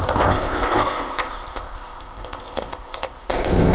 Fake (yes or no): yes